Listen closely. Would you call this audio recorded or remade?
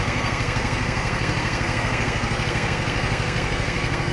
remade